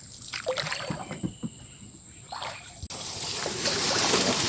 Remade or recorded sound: recorded